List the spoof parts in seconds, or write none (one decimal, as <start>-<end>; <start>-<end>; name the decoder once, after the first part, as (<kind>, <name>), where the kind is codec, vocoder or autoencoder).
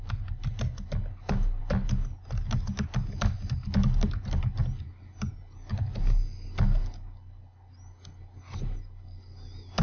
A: none